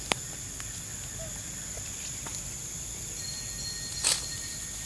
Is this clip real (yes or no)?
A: yes